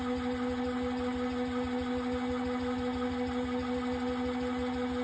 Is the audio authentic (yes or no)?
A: yes